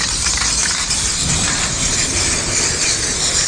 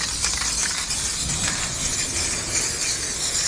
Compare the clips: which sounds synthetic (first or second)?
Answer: first